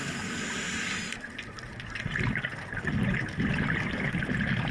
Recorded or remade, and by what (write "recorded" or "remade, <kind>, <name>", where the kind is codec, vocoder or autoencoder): recorded